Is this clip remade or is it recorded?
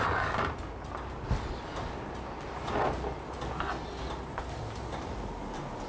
recorded